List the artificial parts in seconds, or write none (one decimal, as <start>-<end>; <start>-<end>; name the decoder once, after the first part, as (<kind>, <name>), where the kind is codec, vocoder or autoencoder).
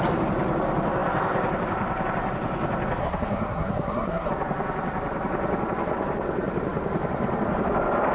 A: 3.0-4.3 (codec, SNAC)